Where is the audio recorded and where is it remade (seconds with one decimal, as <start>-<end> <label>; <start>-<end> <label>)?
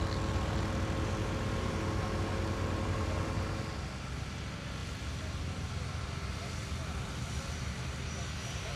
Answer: 0.0-8.8 recorded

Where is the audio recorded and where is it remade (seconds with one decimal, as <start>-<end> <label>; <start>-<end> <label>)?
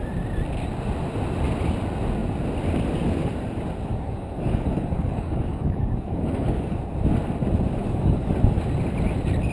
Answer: 0.0-3.9 recorded; 3.9-6.8 remade; 6.8-7.8 recorded; 7.8-8.3 remade; 8.3-9.5 recorded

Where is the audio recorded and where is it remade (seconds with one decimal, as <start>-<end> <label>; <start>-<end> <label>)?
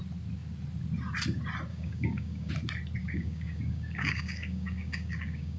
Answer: 0.0-1.7 recorded; 1.7-2.5 remade; 2.5-3.0 recorded; 3.0-5.6 remade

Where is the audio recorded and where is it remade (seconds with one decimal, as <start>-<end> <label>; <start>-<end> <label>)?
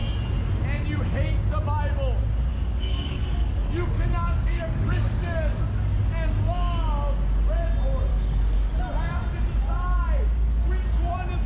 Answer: 0.0-2.5 recorded; 2.5-5.6 remade; 5.6-8.1 recorded; 8.1-8.8 remade; 8.8-11.5 recorded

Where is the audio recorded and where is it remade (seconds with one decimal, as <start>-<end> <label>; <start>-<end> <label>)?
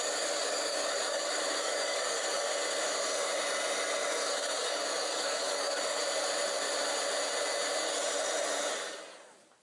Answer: 0.0-2.5 remade; 2.5-4.3 recorded; 4.3-6.0 remade; 6.0-9.6 recorded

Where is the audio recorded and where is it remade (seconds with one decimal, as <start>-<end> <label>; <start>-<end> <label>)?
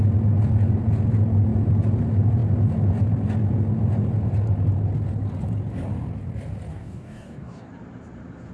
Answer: 0.0-6.7 recorded; 6.7-7.7 remade; 7.7-8.5 recorded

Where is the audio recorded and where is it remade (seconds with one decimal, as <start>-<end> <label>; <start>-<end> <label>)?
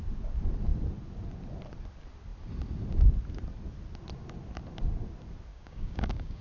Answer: 0.0-5.5 recorded; 5.5-6.4 remade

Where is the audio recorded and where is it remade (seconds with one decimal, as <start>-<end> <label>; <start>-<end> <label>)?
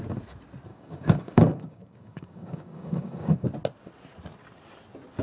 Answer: 0.0-0.7 recorded; 0.7-3.5 remade; 3.5-5.2 recorded